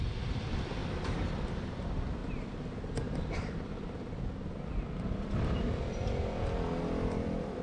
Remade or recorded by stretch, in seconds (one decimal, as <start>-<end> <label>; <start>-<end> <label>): 0.0-2.2 remade; 2.2-6.8 recorded; 6.8-7.6 remade